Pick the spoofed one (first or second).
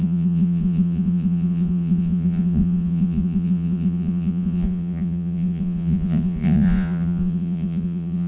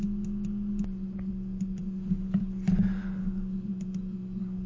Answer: first